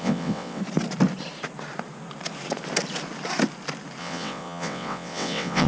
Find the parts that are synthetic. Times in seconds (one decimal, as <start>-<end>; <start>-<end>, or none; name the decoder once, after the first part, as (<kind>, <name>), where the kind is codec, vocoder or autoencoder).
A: 0.0-0.6 (vocoder, WaveNeXt); 4.0-5.7